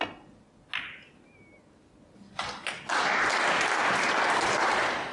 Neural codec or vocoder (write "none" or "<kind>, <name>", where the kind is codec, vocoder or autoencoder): none